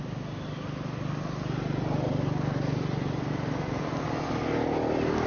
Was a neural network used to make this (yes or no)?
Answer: no